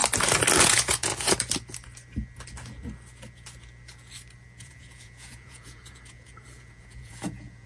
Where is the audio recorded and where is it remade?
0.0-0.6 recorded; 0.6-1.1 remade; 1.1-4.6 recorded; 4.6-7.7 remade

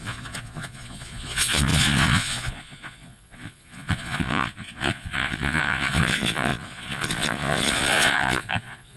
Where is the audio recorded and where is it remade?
0.0-9.0 remade

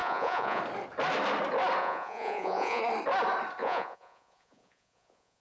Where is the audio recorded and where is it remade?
0.0-0.6 remade; 0.6-1.8 recorded; 1.8-2.8 remade; 2.8-3.6 recorded; 3.6-5.4 remade

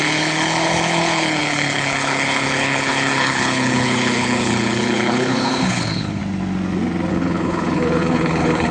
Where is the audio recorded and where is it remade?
0.0-6.2 remade; 6.2-7.1 recorded; 7.1-8.7 remade